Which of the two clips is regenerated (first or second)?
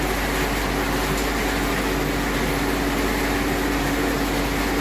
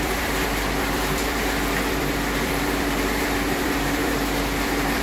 second